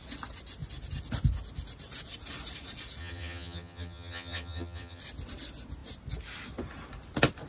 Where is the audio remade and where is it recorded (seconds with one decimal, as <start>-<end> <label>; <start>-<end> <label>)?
0.0-3.0 recorded; 3.0-5.0 remade; 5.0-7.5 recorded